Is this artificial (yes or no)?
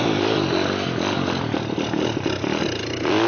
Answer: no